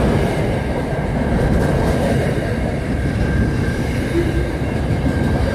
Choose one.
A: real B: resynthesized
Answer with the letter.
B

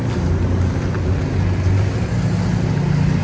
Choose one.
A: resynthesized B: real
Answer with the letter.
B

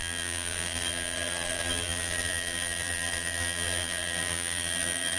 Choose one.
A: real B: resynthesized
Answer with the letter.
B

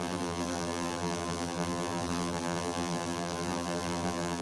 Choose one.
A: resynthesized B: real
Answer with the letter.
A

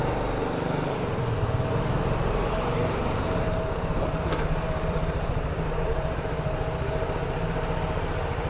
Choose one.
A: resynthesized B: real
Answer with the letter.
A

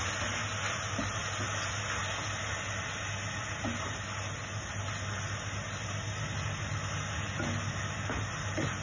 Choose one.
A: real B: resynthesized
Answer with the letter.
A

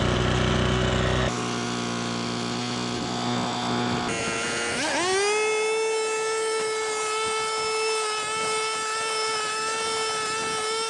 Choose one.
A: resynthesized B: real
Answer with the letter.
B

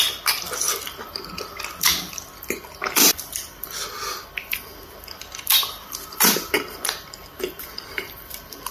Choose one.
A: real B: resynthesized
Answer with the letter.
B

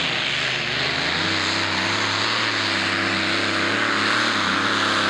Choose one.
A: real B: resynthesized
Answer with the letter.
A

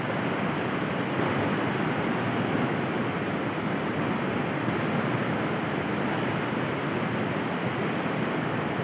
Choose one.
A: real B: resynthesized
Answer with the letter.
B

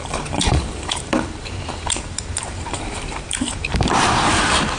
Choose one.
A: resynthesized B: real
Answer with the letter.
A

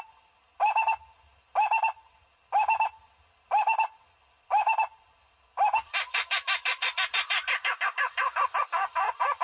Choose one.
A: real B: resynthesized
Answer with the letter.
A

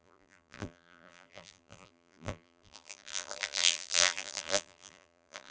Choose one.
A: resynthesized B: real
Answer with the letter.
A